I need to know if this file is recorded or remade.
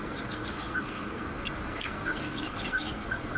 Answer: remade